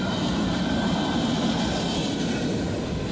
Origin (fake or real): real